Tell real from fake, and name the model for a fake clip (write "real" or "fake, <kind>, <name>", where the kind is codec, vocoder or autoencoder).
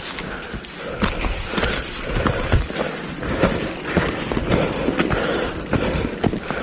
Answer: real